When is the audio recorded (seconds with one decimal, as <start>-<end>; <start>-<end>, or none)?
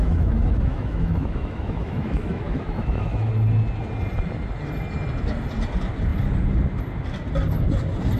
3.3-8.2